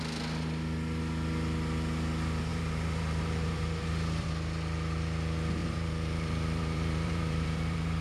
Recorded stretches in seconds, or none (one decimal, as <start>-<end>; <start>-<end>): 0.0-2.5; 4.3-5.6